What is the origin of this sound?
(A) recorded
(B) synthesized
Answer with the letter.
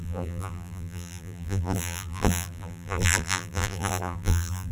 B